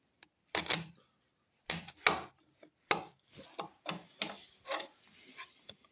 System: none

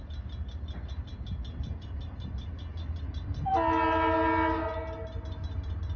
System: none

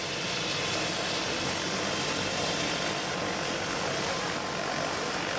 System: none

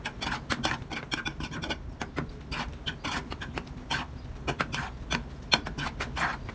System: none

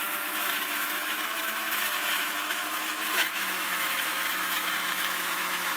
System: autoencoder, DAC-VAE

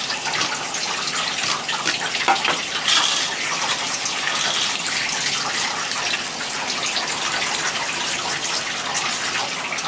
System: none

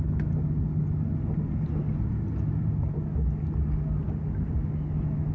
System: none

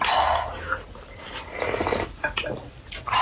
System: none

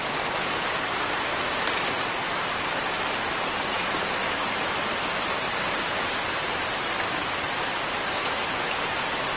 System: vocoder, BigVGAN v2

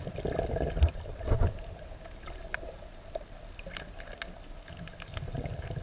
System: none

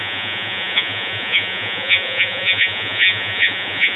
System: vocoder, Vocos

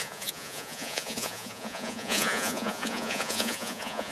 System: vocoder, Vocos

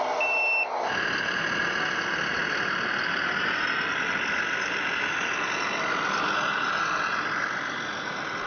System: none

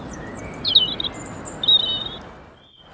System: none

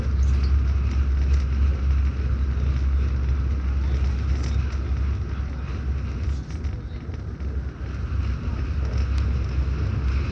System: none